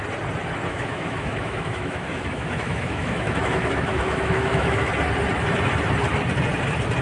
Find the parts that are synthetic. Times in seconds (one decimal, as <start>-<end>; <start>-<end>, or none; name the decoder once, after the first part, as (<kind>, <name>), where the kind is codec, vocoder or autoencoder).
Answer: 0.7-4.9 (autoencoder, DAC-VAE)